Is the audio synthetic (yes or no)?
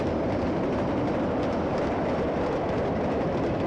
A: no